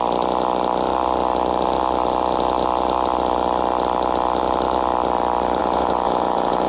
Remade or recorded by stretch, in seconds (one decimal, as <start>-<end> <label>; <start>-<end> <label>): 0.0-5.6 recorded; 5.6-6.7 remade